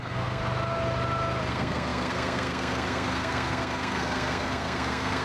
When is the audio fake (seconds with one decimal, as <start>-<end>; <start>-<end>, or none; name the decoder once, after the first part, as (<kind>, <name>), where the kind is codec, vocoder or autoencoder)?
0.0-0.4 (codec, SNAC); 1.5-5.2